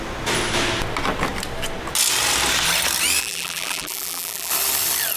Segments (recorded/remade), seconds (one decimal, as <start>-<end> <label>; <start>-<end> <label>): 0.0-3.2 recorded; 3.2-4.5 remade; 4.5-5.2 recorded